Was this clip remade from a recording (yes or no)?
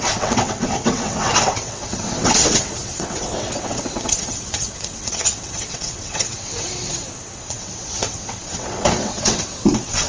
yes